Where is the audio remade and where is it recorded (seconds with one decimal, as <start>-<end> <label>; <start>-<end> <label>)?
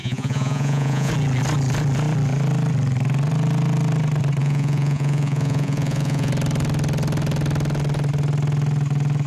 0.0-1.1 remade; 1.1-4.4 recorded; 4.4-6.3 remade; 6.3-9.3 recorded